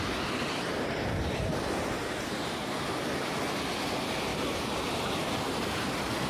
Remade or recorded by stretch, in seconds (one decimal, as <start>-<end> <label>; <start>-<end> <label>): 0.0-4.3 recorded; 4.3-5.3 remade; 5.3-6.3 recorded